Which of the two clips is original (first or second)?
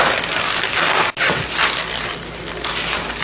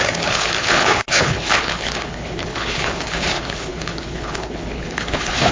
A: first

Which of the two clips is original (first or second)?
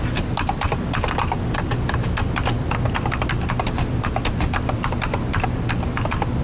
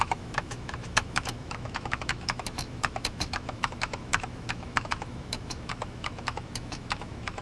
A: first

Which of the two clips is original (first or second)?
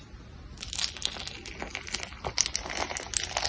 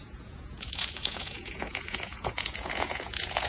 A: first